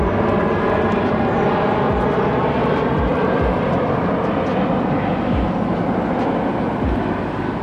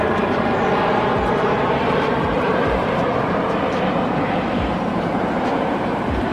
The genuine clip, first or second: first